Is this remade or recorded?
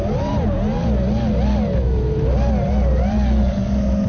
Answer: recorded